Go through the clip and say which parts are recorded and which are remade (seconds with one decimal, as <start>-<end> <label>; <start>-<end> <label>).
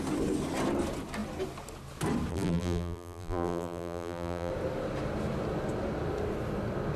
0.0-2.3 recorded; 2.3-4.5 remade; 4.5-7.0 recorded